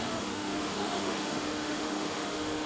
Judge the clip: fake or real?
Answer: fake